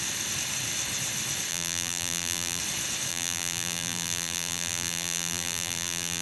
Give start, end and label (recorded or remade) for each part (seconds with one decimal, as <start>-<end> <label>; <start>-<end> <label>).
0.0-1.5 recorded; 1.5-2.6 remade; 2.6-3.1 recorded; 3.1-6.2 remade